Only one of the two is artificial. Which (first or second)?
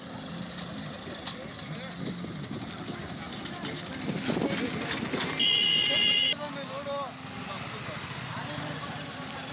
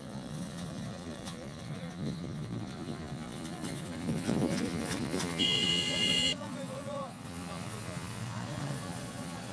second